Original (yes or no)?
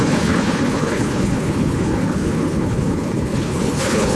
no